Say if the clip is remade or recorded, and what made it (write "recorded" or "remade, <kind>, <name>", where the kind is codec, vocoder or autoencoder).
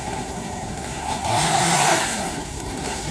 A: remade, codec, SNAC